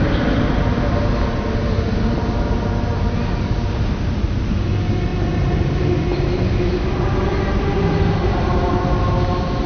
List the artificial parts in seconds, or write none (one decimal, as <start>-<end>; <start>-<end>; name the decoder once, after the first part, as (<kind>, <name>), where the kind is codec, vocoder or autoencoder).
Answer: none